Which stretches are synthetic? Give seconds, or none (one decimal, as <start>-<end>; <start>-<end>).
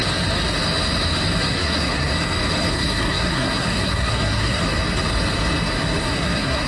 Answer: 1.4-2.1; 2.7-4.6; 6.0-6.7